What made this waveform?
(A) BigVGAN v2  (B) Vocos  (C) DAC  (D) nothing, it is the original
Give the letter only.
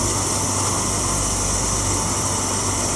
D